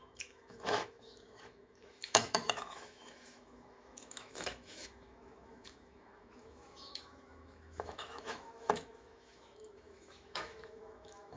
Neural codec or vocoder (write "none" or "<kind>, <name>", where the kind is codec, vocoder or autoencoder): autoencoder, DAC-VAE